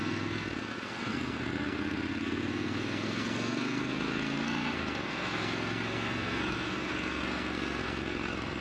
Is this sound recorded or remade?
remade